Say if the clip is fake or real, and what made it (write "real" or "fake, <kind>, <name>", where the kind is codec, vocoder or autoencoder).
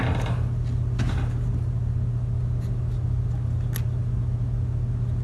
real